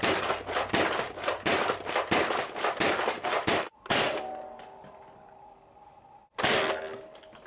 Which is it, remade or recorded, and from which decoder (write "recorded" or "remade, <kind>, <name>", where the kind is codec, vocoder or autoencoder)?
recorded